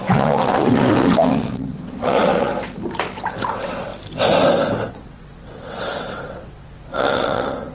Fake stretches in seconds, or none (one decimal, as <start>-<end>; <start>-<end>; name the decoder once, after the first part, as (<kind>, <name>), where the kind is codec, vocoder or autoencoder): 0.0-2.5 (vocoder, WaveNeXt); 3.5-3.9; 4.9-7.7